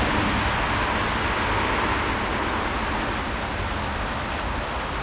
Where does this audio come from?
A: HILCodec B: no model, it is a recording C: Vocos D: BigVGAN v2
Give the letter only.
B